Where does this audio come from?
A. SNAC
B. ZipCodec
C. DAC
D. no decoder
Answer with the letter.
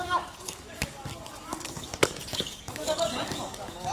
C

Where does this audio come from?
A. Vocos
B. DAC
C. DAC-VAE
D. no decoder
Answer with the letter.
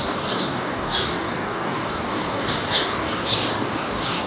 B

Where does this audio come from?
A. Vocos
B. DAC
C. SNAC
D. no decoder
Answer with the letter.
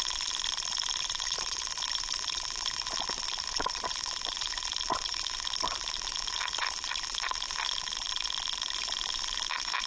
D